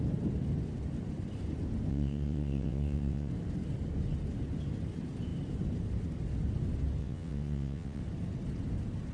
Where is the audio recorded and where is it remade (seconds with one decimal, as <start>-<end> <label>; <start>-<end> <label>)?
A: 0.0-1.9 recorded; 1.9-3.3 remade; 3.3-7.0 recorded; 7.0-8.0 remade; 8.0-9.1 recorded